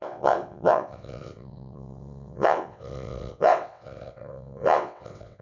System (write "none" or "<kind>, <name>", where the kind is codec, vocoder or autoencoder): vocoder, WaveNeXt